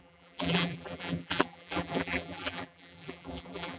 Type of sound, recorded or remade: remade